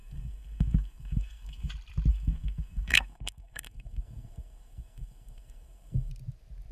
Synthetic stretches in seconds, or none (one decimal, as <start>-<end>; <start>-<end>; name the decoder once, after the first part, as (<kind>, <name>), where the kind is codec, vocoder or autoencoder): 0.0-1.7 (codec, SNAC); 2.1-6.1